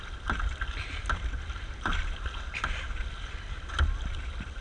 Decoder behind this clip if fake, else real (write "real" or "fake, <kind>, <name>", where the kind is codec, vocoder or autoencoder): real